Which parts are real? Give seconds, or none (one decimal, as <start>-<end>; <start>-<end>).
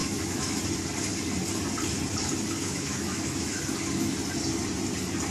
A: 0.6-2.6; 3.6-5.3